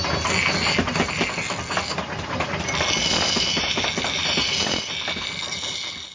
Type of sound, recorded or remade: recorded